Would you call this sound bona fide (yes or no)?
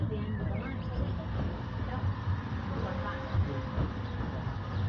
yes